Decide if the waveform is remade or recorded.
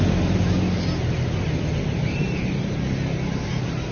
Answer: recorded